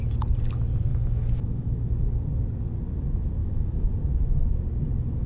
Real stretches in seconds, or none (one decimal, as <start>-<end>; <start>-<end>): 0.0-0.9; 1.9-3.4; 3.9-5.3